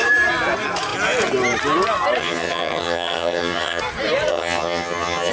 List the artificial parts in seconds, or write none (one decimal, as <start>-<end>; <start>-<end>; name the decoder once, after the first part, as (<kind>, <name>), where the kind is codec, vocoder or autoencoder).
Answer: 2.2-3.8 (vocoder, HiFi-GAN); 4.3-5.3